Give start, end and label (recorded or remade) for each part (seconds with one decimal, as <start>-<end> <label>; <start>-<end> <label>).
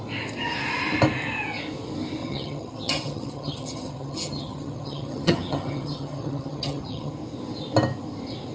0.0-2.2 recorded; 2.2-7.1 remade; 7.1-8.5 recorded